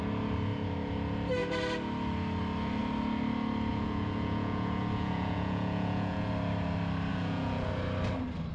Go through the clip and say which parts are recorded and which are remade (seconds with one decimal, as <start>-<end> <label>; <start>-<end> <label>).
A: 0.0-3.7 recorded; 3.7-6.3 remade; 6.3-7.1 recorded; 7.1-7.7 remade; 7.7-8.5 recorded